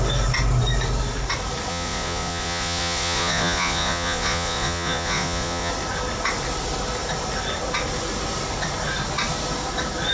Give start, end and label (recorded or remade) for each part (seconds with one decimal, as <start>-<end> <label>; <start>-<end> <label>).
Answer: 0.0-1.7 recorded; 1.7-5.7 remade; 5.7-10.1 recorded